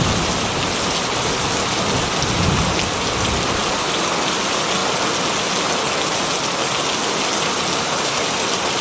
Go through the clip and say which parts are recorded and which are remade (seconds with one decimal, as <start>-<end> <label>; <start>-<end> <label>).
0.0-8.8 recorded